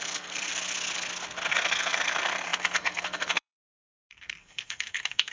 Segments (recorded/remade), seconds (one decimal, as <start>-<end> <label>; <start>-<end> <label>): 0.0-0.5 remade; 0.5-1.5 recorded; 1.5-5.3 remade